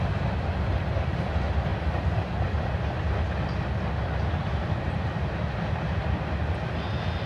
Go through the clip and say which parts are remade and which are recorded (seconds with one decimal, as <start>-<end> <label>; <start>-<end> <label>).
0.0-7.3 recorded